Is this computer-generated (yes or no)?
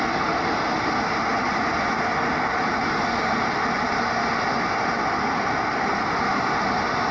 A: no